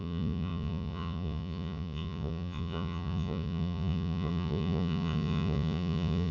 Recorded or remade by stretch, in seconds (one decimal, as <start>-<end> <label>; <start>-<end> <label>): 0.0-6.3 remade